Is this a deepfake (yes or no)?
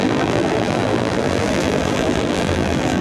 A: yes